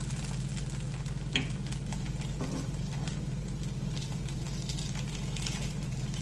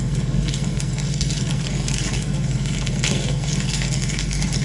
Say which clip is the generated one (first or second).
second